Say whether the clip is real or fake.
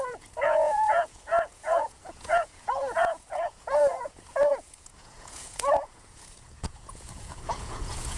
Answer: fake